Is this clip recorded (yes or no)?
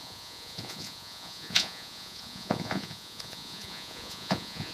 no